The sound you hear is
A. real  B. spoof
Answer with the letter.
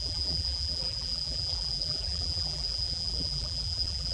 B